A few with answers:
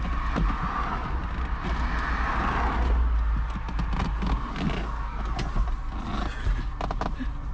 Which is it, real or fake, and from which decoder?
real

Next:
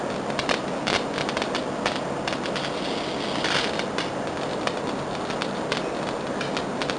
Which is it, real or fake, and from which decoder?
real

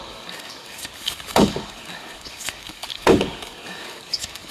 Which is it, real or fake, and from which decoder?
fake, codec, DAC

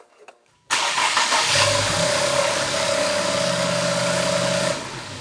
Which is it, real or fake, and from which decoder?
fake, codec, DAC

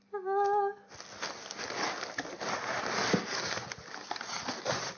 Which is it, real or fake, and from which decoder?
real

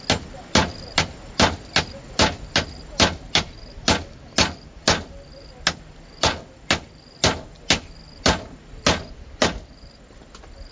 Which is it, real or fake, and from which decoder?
real